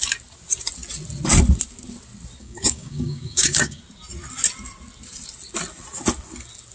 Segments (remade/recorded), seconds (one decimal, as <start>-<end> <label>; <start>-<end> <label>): 0.0-2.4 recorded; 2.4-3.8 remade; 3.8-6.7 recorded

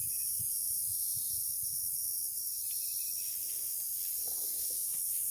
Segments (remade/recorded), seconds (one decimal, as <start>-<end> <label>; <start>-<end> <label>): 0.0-5.3 recorded

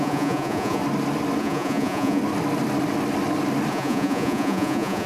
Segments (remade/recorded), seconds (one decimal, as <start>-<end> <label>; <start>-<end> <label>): 0.0-0.8 remade; 0.8-1.4 recorded; 1.4-2.2 remade; 2.2-3.7 recorded; 3.7-5.1 remade

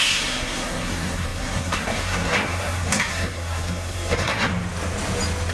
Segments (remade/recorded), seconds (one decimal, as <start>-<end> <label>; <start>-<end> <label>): 0.0-4.5 remade; 4.5-5.5 recorded

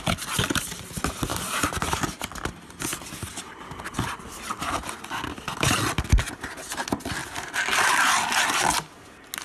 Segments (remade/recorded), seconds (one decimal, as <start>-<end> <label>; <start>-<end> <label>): 0.0-9.4 recorded

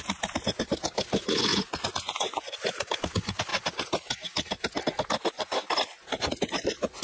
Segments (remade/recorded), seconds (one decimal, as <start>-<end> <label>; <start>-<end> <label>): 0.0-1.5 recorded; 1.5-2.6 remade; 2.6-7.0 recorded

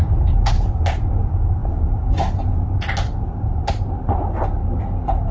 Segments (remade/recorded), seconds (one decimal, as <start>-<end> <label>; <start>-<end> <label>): 0.0-5.3 recorded